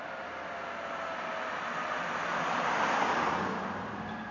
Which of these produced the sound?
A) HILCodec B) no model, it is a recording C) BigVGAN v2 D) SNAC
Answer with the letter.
B